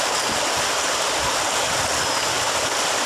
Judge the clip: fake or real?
real